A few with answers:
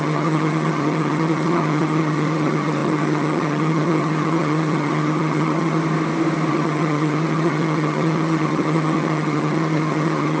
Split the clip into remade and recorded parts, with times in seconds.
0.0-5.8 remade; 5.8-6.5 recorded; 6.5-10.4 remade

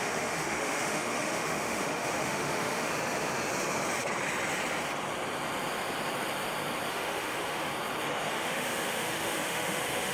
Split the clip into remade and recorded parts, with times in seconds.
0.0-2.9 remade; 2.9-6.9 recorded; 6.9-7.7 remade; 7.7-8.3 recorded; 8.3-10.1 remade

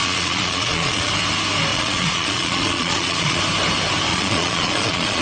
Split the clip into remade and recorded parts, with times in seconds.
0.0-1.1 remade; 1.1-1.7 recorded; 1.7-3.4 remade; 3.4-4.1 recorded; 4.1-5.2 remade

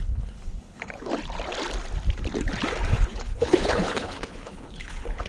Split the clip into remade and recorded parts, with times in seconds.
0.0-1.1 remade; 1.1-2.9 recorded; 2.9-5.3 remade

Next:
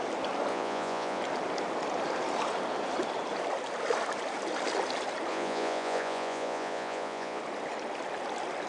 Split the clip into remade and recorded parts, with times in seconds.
0.0-0.5 recorded; 0.5-1.2 remade; 1.2-5.3 recorded; 5.3-7.4 remade; 7.4-8.7 recorded